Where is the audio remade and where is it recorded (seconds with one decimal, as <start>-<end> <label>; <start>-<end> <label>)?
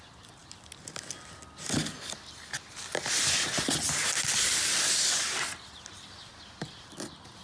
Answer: 0.0-7.4 recorded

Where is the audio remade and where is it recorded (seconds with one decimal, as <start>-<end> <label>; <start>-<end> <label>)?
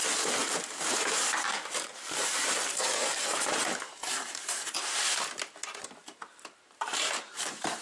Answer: 0.0-0.4 recorded; 0.4-5.1 remade; 5.1-6.0 recorded; 6.0-7.8 remade